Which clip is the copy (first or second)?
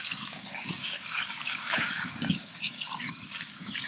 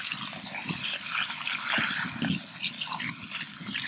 first